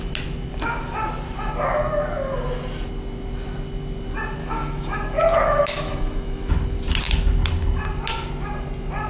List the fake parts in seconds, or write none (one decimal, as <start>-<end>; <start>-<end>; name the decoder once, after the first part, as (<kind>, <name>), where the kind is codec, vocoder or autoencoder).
4.4-6.5 (autoencoder, DAC-VAE)